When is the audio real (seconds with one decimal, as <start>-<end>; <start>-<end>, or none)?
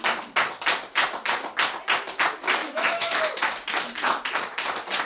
0.0-2.6; 3.2-5.1